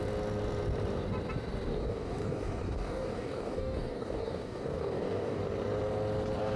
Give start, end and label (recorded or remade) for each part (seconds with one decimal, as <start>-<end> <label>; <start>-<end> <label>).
0.0-1.7 recorded; 1.7-5.4 remade; 5.4-6.6 recorded